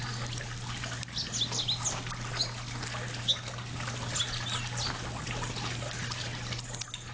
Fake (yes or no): no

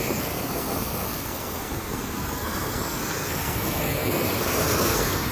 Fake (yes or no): yes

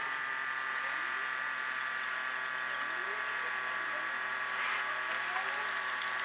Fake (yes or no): no